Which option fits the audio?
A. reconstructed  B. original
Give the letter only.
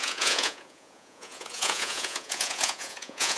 A